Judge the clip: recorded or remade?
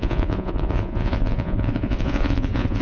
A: remade